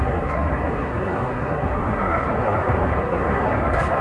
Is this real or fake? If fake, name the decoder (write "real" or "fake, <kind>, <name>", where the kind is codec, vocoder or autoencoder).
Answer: fake, codec, SNAC